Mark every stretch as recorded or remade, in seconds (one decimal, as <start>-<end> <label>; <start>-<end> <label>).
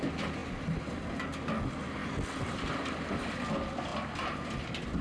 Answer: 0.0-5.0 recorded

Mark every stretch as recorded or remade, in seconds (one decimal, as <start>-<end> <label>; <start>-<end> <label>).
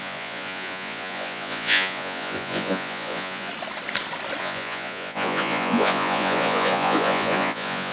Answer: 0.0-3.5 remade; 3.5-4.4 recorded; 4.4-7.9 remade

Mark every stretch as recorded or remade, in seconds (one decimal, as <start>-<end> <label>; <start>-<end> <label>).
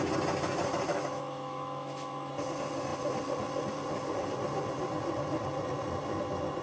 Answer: 0.0-0.9 recorded; 0.9-2.3 remade; 2.3-6.6 recorded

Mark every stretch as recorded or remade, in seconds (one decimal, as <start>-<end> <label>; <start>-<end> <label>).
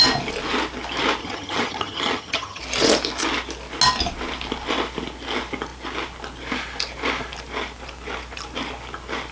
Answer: 0.0-1.2 recorded; 1.2-2.6 remade; 2.6-9.3 recorded